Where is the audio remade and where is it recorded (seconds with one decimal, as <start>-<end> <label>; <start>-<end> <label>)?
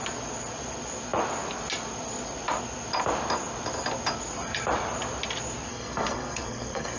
0.0-5.7 recorded; 5.7-7.0 remade